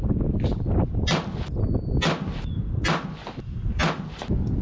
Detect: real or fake real